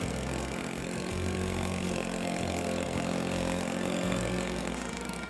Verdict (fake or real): fake